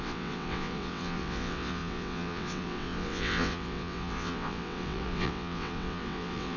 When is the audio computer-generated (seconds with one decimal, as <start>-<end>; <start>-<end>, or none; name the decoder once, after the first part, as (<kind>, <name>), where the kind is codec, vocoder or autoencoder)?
0.0-6.6 (vocoder, WaveNeXt)